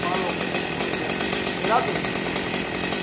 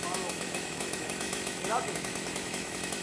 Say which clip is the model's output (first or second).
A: second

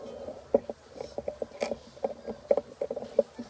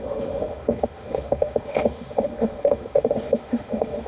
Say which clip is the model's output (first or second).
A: second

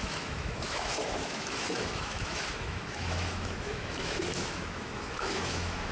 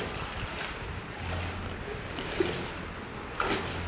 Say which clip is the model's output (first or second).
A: first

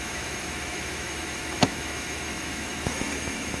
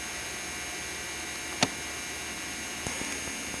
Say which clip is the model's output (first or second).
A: first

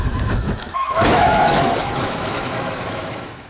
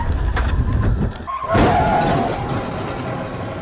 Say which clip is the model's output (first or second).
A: first